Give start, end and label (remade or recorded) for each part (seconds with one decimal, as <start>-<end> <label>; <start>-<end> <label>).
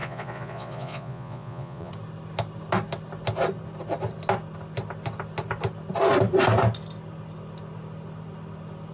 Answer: 0.0-1.9 remade; 1.9-8.9 recorded